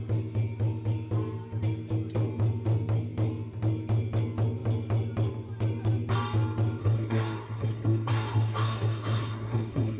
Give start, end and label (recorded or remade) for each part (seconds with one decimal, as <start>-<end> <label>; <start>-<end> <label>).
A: 0.0-6.8 recorded; 6.8-10.0 remade